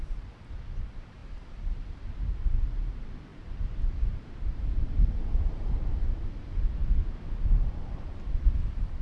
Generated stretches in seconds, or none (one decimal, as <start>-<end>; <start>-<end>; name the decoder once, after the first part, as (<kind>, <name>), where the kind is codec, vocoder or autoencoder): none